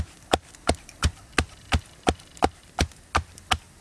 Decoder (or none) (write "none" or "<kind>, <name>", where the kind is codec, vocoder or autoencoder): none